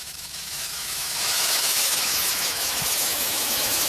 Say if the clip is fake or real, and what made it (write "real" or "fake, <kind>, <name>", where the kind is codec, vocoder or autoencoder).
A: fake, autoencoder, DAC-VAE